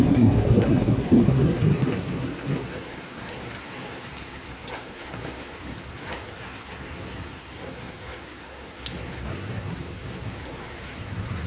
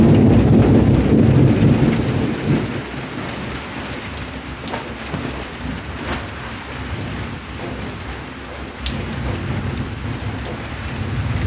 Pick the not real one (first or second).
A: first